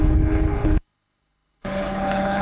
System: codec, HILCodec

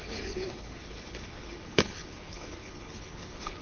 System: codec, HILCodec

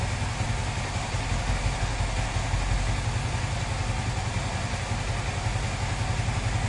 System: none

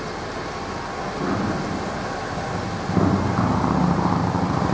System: none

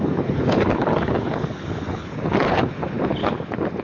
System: codec, HILCodec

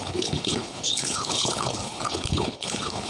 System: codec, HILCodec